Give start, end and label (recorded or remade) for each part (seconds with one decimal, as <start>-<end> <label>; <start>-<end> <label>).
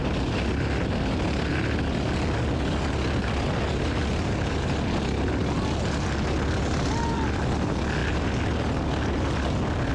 0.0-9.9 recorded